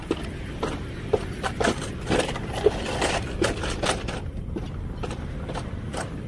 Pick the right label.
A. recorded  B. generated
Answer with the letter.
B